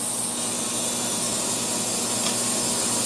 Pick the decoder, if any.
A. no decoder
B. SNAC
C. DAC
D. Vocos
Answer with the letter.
A